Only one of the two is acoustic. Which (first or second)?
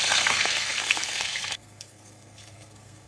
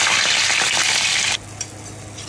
second